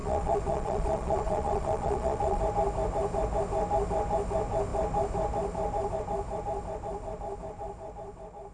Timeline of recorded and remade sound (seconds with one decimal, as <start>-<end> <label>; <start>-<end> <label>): 0.0-2.4 remade; 2.4-8.5 recorded